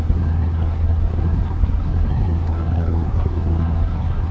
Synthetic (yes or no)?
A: yes